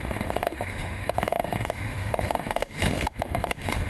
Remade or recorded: remade